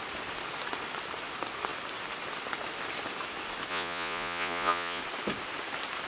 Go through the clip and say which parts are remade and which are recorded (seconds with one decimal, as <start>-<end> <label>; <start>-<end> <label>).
0.0-3.7 recorded; 3.7-5.0 remade; 5.0-6.1 recorded